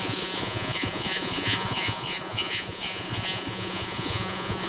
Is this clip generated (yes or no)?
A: yes